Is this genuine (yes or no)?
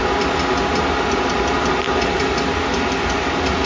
yes